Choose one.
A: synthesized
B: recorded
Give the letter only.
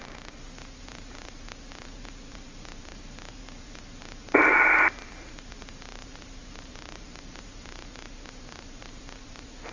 A